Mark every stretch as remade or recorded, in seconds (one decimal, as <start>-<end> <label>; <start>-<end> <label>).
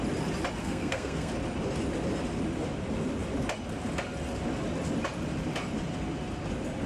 0.0-0.6 recorded; 0.6-1.3 remade; 1.3-6.9 recorded